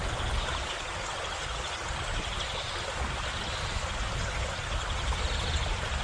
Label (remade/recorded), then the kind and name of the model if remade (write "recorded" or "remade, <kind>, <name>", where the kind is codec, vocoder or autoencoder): recorded